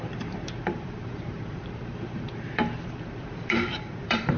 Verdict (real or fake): fake